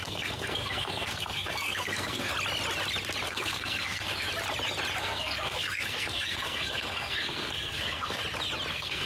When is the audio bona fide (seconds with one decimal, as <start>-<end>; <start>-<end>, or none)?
2.3-3.3; 4.3-5.0; 8.2-8.7